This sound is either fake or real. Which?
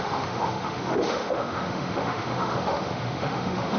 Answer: fake